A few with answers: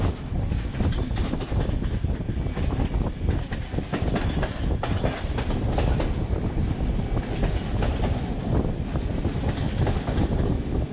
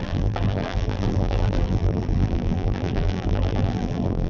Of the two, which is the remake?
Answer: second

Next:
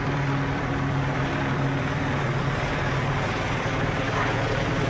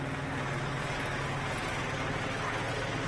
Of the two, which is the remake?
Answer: first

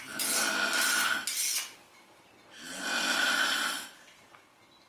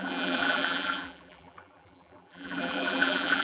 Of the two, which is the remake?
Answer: second